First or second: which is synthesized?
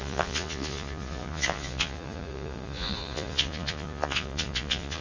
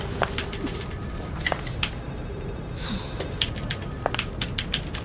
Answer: first